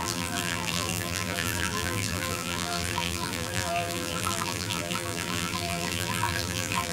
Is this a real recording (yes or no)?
no